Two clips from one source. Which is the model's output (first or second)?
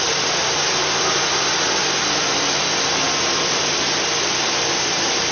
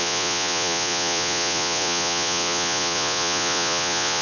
second